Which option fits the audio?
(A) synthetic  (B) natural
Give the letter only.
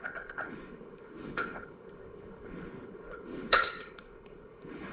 A